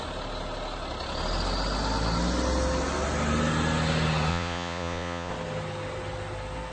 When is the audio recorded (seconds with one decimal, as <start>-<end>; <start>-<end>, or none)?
0.0-4.3; 5.3-6.7